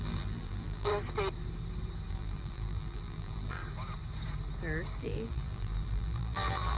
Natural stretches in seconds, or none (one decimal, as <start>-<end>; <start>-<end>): 0.9-2.1; 3.6-5.0